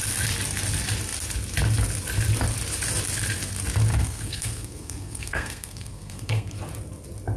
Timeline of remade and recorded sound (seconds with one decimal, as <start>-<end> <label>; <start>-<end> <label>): 0.0-3.9 recorded; 3.9-6.6 remade; 6.6-7.4 recorded